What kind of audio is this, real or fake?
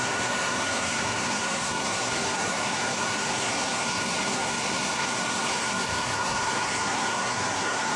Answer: fake